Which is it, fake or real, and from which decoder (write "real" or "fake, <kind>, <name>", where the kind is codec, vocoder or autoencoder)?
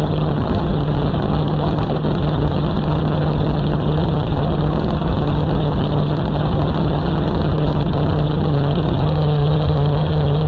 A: fake, vocoder, HiFi-GAN